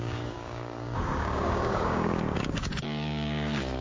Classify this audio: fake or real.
fake